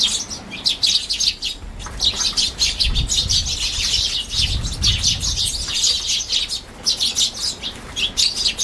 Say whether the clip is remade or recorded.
recorded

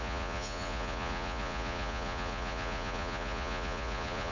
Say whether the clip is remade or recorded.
remade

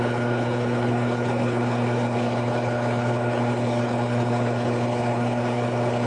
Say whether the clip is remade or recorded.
remade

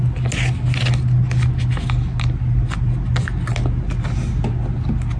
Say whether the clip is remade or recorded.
recorded